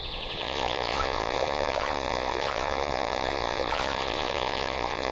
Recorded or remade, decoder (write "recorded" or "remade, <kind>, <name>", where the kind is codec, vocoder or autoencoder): remade, vocoder, Vocos